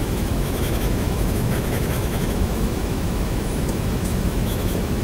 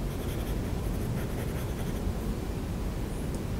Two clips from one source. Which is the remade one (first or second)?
first